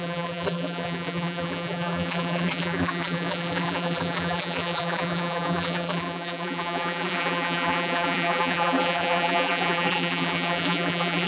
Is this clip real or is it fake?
fake